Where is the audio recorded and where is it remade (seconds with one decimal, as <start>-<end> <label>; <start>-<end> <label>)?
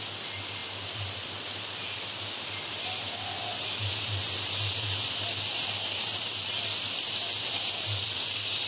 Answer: 0.0-8.7 recorded